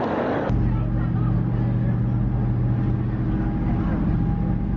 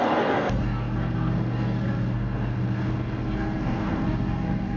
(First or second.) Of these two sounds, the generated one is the second